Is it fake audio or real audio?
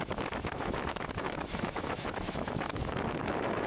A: fake